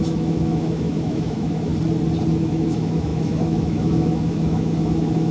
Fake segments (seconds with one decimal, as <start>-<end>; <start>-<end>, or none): 0.0-1.7; 2.3-5.3